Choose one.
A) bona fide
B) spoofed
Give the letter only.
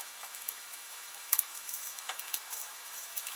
B